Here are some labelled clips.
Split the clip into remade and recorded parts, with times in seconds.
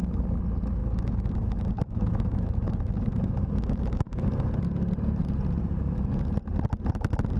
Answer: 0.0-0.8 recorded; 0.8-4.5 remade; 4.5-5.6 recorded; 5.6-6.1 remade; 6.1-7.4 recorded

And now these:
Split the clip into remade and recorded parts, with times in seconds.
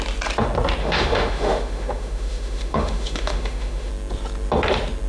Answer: 0.0-0.8 recorded; 0.8-3.9 remade; 3.9-5.1 recorded